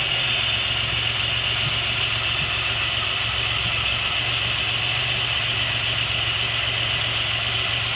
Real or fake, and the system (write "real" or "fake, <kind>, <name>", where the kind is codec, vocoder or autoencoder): real